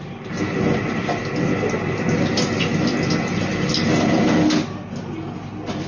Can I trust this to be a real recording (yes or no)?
yes